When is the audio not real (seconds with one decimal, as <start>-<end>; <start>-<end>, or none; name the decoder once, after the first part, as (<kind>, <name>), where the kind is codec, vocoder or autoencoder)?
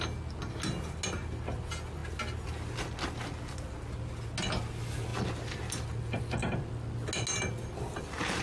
none